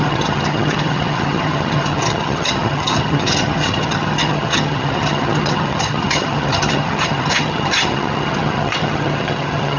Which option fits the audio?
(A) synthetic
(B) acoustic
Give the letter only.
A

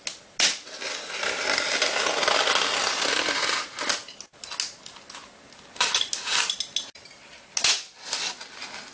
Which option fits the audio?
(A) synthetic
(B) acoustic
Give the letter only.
B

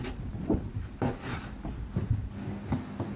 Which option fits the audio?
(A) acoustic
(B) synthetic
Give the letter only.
A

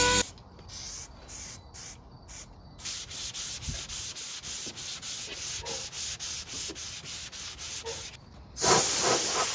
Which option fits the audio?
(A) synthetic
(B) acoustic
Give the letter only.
B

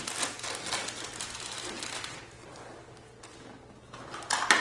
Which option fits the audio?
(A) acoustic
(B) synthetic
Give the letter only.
A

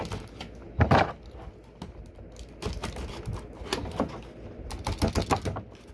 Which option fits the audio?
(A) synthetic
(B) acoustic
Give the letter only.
B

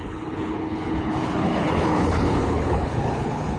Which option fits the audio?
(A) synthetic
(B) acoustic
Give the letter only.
A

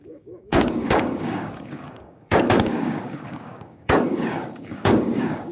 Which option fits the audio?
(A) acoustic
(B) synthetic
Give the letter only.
B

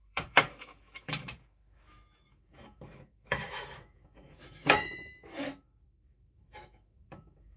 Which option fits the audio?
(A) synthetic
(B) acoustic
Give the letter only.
A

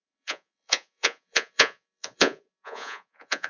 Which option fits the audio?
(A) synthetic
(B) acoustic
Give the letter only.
A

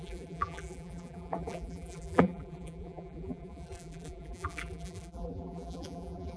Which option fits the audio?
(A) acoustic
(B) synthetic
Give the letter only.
B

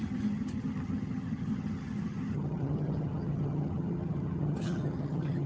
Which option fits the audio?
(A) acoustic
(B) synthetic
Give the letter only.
B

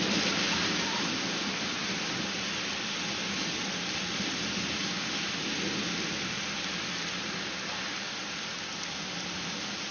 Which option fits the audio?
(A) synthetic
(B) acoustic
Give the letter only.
B